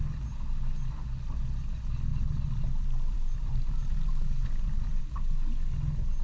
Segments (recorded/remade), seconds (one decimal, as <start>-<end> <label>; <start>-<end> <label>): 0.0-2.1 recorded; 2.1-5.0 remade; 5.0-6.2 recorded